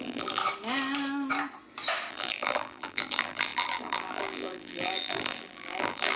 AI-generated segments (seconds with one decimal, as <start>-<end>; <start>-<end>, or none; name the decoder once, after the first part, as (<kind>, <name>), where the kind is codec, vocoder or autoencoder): 0.0-0.4 (vocoder, BigVGAN v2); 2.1-6.2